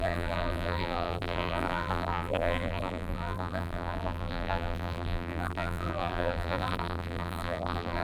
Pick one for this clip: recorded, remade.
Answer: remade